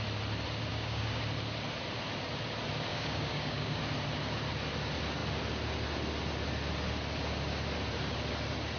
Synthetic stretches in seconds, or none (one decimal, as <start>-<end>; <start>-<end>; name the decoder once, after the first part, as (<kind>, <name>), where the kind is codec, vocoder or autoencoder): 0.7-1.2 (codec, DAC); 2.9-3.8